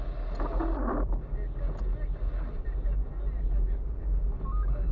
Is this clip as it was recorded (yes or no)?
yes